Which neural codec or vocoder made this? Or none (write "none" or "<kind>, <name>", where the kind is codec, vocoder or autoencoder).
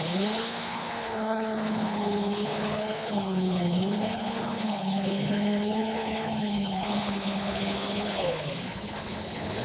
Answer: codec, HILCodec